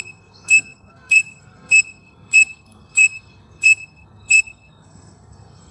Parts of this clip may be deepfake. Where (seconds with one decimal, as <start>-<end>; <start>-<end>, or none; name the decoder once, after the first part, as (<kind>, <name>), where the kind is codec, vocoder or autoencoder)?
0.0-5.7 (codec, SNAC)